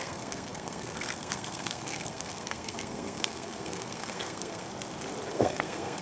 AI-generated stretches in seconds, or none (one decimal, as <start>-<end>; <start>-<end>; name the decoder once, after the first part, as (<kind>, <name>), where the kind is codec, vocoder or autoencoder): 0.0-4.7 (codec, SNAC); 5.3-6.0